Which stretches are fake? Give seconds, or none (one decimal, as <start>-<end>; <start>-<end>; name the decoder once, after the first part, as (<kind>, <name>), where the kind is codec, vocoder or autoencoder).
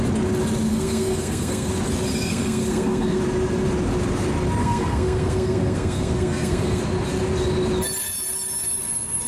0.7-1.7 (codec, SNAC); 2.1-3.2; 4.6-6.8